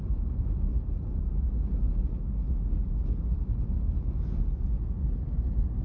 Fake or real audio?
real